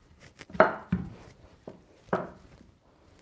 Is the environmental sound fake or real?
fake